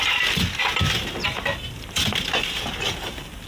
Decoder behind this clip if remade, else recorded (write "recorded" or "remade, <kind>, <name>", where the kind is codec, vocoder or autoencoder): recorded